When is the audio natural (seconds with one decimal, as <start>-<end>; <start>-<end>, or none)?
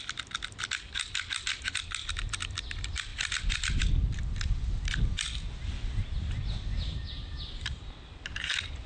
0.0-8.9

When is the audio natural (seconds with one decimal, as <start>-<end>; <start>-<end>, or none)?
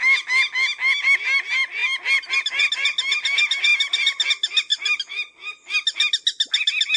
0.0-7.0